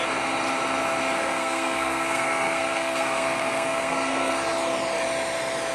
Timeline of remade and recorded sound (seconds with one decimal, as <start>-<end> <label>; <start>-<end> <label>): 0.0-1.2 recorded; 1.2-4.3 remade; 4.3-5.7 recorded